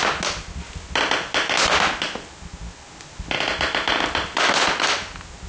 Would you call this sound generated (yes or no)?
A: no